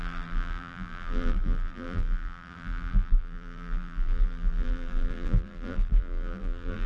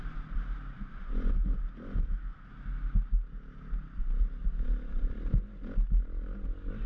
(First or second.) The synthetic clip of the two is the first